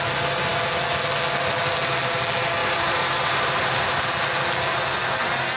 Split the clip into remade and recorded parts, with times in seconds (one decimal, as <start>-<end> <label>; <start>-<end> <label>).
0.0-2.6 recorded; 2.6-4.0 remade; 4.0-5.6 recorded